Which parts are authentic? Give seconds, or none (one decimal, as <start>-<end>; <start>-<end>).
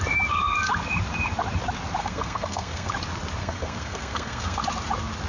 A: 0.0-2.0; 2.9-3.4; 4.6-5.3